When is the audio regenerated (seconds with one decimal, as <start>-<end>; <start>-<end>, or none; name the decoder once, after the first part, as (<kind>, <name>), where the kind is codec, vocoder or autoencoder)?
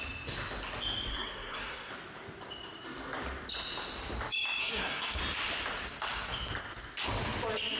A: 1.1-1.9 (codec, SNAC); 4.6-5.2